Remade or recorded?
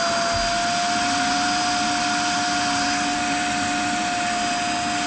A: recorded